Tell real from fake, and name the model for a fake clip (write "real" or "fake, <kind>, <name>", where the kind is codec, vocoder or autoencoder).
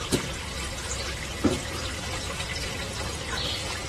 real